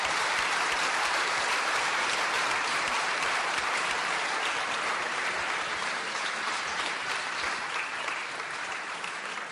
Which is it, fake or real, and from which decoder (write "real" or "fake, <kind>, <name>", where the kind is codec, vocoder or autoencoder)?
fake, vocoder, BigVGAN v2